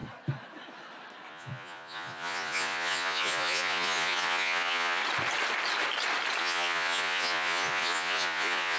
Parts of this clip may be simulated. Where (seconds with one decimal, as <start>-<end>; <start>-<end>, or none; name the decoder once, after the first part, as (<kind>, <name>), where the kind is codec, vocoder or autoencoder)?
1.3-5.0 (vocoder, Vocos); 6.4-8.8

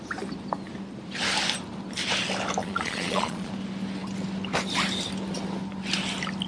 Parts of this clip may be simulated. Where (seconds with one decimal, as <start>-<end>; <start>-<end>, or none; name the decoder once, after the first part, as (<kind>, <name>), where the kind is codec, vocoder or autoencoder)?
2.6-3.5 (vocoder, Vocos)

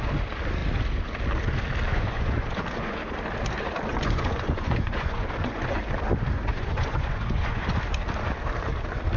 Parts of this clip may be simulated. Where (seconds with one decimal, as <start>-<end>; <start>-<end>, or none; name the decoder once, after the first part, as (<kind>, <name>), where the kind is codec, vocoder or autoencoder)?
1.9-3.0 (vocoder, Vocos); 3.9-5.8; 6.5-7.7